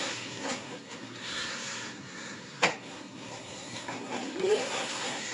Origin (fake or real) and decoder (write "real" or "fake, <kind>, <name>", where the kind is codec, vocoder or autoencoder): fake, codec, SNAC